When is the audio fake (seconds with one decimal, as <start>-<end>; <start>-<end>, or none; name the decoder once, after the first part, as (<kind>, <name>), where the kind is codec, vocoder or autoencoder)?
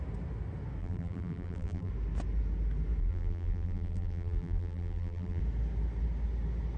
0.8-1.9 (vocoder, BigVGAN v2); 3.0-5.4